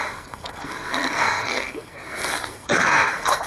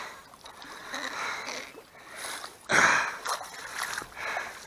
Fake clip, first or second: first